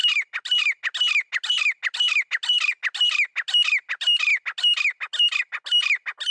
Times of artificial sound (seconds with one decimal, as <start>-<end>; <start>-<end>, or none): none